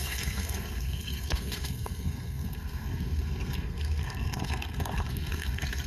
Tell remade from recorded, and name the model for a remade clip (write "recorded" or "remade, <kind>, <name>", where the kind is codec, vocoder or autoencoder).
remade, codec, SNAC